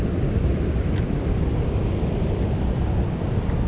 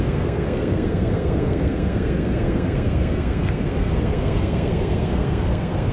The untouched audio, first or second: first